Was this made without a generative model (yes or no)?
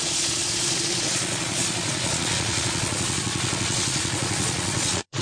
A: no